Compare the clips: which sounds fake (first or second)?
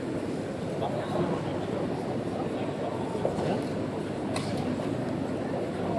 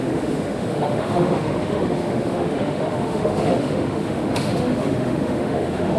second